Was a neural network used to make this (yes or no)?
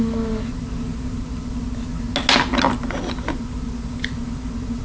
no